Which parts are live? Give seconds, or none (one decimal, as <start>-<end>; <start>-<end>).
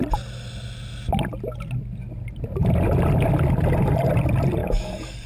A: 0.0-4.6